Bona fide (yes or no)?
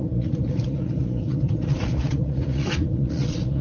no